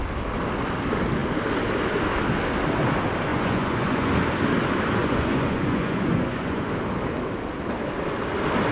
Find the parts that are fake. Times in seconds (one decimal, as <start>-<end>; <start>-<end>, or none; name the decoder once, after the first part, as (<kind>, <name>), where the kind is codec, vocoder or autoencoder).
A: 3.3-4.1 (vocoder, Vocos); 5.0-6.7